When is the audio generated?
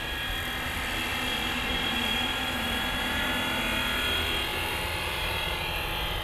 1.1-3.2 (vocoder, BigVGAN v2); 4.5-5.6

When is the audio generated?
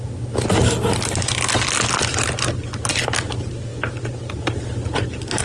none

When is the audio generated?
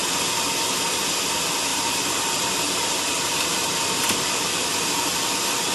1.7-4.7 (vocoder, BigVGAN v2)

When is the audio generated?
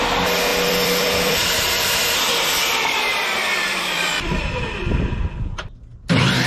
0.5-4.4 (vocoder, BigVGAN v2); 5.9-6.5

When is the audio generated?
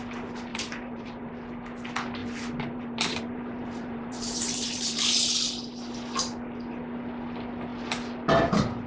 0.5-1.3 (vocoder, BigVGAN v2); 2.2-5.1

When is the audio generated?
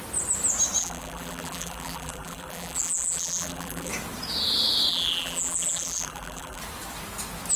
0.8-3.9 (vocoder, BigVGAN v2); 4.9-6.6